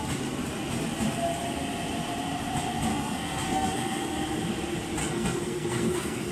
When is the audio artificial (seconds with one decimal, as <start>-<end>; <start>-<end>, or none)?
2.9-4.2; 5.0-6.3